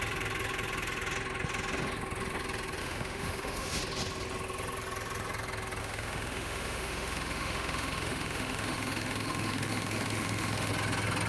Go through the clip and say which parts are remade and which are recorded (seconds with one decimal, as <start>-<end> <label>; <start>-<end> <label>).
0.0-2.8 recorded; 2.8-3.8 remade; 3.8-5.8 recorded; 5.8-10.7 remade; 10.7-11.3 recorded